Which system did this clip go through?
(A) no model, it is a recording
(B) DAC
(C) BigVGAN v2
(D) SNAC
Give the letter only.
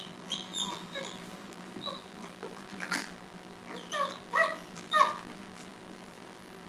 C